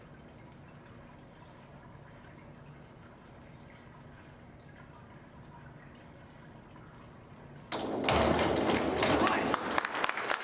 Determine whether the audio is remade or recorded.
recorded